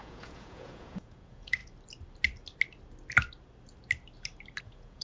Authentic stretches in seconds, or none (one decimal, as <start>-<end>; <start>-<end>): 1.6-4.6